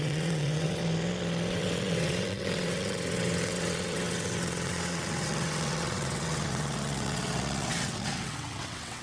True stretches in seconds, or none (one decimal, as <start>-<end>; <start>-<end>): 0.8-1.5